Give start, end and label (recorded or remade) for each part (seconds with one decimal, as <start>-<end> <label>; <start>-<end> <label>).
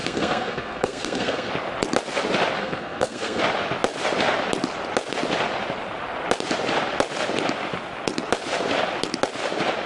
0.0-1.5 remade; 1.5-2.6 recorded; 2.6-3.4 remade; 3.4-9.9 recorded